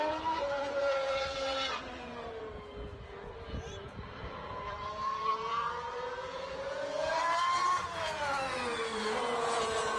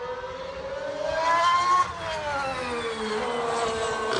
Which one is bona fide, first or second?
second